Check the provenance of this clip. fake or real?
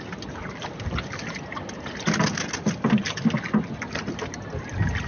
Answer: real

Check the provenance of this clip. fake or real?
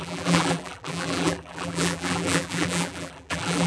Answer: fake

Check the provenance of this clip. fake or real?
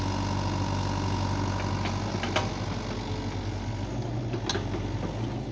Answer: real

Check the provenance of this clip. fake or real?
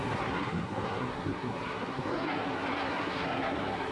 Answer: fake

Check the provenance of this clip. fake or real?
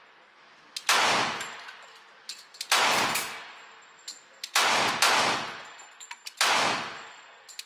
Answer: real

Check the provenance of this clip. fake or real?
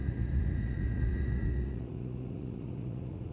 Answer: fake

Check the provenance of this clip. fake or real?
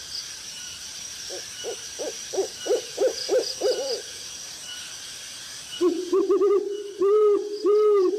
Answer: fake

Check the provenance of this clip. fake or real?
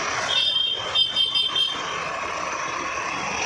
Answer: real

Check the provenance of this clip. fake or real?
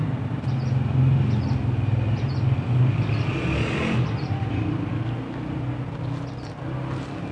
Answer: real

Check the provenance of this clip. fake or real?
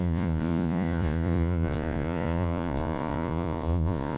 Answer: fake